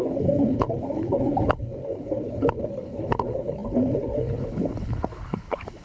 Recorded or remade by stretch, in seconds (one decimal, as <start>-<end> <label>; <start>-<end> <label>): 0.0-5.8 remade